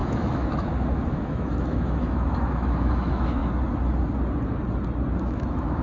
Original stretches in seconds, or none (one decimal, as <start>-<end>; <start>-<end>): 3.4-5.2